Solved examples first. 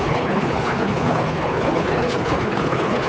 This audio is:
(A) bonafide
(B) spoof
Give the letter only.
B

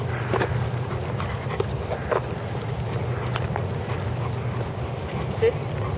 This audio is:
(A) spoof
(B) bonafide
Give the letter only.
B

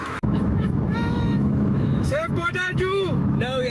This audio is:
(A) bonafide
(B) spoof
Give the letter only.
B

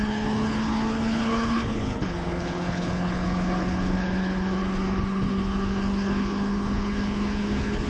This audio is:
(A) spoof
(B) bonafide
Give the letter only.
A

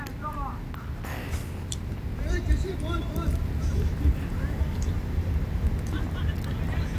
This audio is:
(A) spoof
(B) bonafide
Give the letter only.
B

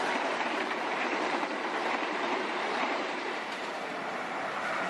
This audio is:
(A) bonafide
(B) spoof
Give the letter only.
B